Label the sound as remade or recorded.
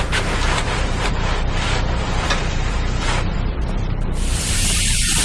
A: remade